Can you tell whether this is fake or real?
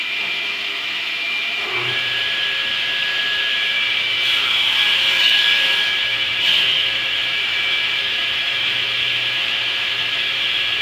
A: fake